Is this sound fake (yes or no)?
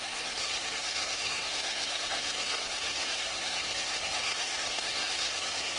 yes